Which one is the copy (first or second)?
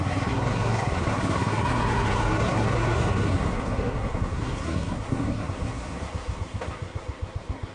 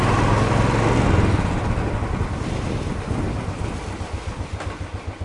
first